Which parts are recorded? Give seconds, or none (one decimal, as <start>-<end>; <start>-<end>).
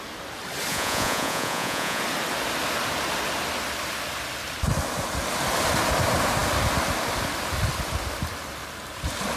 0.0-0.7; 2.0-9.4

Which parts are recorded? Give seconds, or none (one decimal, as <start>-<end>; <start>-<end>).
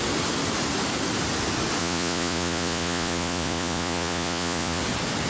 0.0-1.8; 4.8-5.3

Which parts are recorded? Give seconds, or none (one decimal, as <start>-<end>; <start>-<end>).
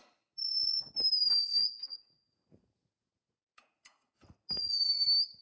0.0-0.4; 0.9-1.6; 4.1-5.4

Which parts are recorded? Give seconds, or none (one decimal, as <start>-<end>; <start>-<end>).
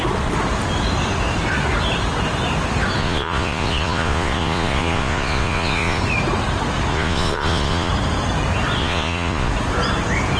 0.0-3.0; 6.0-6.9; 7.9-8.8; 9.5-10.4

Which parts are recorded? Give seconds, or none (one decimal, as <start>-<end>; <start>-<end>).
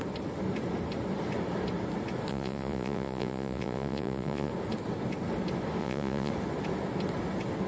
0.0-2.3; 4.5-5.8; 6.3-7.7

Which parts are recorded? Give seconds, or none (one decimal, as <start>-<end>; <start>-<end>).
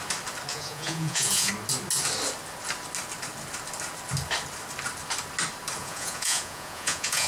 0.0-0.5; 1.5-5.8